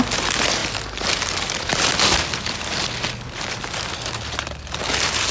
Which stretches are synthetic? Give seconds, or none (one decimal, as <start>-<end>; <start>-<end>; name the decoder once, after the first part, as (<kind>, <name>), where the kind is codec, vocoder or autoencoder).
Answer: none